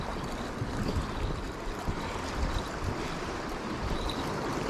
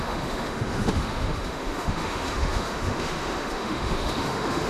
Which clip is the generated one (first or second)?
second